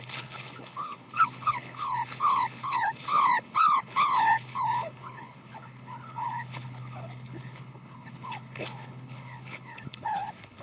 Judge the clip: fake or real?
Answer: fake